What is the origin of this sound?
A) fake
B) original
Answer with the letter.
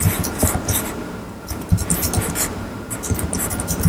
A